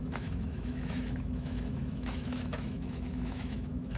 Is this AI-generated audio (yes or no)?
yes